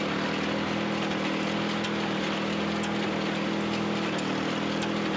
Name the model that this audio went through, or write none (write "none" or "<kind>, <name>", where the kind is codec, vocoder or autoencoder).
none